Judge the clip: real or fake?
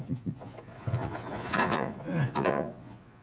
fake